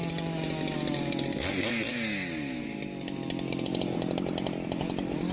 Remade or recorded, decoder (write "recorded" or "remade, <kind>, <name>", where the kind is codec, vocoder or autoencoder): recorded